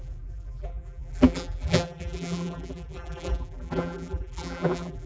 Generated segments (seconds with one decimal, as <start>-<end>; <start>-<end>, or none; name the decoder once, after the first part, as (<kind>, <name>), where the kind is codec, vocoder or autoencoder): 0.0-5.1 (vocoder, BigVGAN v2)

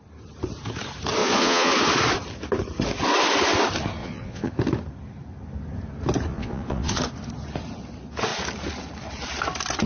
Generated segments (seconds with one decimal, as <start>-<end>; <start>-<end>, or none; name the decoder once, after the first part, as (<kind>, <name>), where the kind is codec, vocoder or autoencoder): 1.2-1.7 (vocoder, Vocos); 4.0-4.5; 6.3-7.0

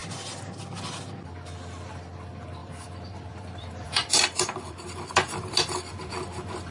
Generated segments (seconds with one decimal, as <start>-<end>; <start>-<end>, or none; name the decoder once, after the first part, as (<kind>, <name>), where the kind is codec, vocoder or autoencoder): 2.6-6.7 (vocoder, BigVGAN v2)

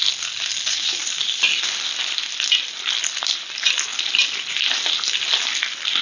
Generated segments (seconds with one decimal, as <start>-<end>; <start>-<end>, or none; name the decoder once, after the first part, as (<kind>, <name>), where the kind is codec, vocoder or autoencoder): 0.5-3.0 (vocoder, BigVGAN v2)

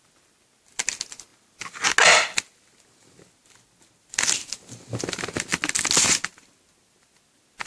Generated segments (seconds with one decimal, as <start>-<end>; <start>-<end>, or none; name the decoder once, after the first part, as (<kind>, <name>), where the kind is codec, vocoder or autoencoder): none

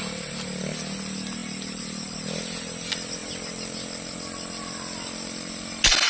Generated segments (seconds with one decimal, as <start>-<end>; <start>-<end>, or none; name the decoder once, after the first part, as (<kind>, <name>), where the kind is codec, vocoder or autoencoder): none